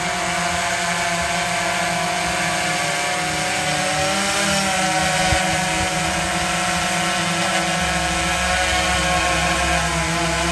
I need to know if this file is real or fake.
real